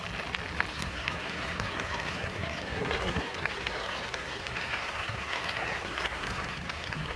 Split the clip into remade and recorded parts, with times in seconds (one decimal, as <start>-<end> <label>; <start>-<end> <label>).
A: 0.0-0.7 recorded; 0.7-7.2 remade